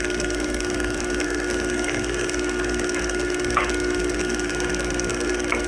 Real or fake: fake